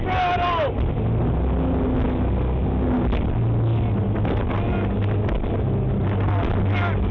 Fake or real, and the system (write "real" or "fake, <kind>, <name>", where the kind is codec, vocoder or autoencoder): real